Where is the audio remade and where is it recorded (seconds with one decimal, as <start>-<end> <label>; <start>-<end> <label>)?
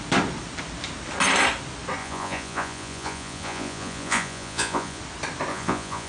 0.0-2.0 recorded; 2.0-5.0 remade; 5.0-5.5 recorded; 5.5-6.1 remade